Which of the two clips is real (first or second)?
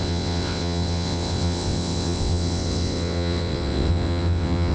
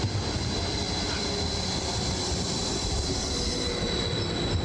second